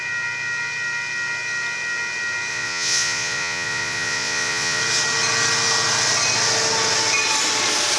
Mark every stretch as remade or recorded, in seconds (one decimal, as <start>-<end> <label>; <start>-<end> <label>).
0.0-2.5 recorded; 2.5-4.8 remade; 4.8-8.0 recorded